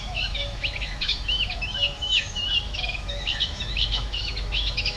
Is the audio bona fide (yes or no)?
no